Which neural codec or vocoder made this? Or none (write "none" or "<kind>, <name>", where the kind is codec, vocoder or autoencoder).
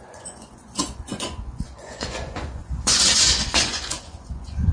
vocoder, Vocos